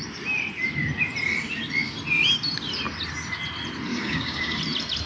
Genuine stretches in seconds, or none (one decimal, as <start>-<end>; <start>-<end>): 0.0-3.9; 4.6-5.1